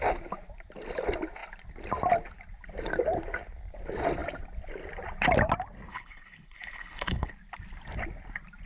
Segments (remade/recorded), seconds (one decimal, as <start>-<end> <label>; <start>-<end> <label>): 0.0-5.9 recorded; 5.9-7.3 remade; 7.3-8.7 recorded